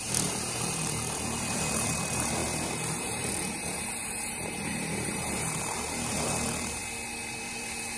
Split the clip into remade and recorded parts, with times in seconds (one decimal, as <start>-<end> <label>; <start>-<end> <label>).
0.0-6.8 remade; 6.8-7.3 recorded; 7.3-8.0 remade